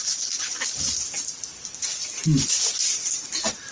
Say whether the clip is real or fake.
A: real